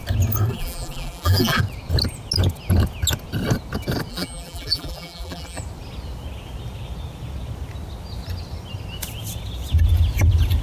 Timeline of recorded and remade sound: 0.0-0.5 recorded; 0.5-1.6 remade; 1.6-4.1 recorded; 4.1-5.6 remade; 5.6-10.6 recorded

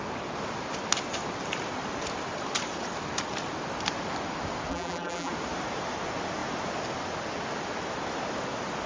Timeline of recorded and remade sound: 0.0-4.7 recorded; 4.7-5.3 remade; 5.3-8.9 recorded

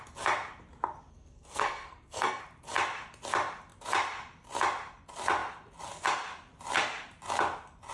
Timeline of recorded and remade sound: 0.0-1.1 recorded; 1.1-2.4 remade; 2.4-7.9 recorded